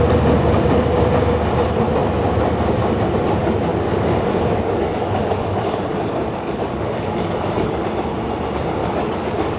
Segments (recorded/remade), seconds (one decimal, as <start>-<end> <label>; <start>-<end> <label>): 0.0-3.7 recorded; 3.7-7.8 remade; 7.8-8.8 recorded; 8.8-9.6 remade